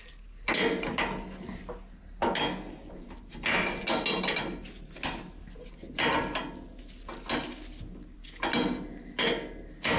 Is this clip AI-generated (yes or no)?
no